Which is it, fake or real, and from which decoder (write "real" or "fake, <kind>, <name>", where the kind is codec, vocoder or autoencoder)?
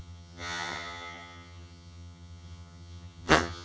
fake, vocoder, HiFi-GAN